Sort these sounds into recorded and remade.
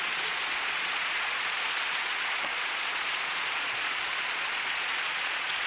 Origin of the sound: remade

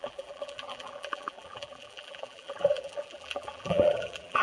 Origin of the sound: remade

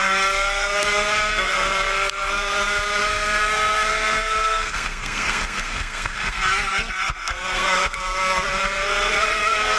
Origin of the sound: remade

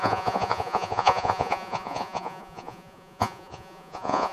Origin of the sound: remade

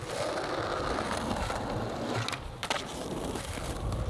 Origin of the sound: recorded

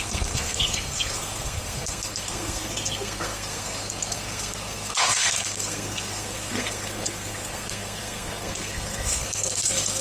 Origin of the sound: remade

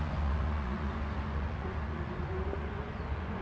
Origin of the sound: remade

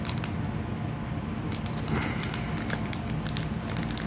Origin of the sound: recorded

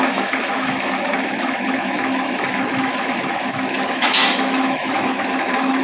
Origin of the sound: remade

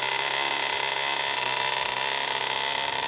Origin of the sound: recorded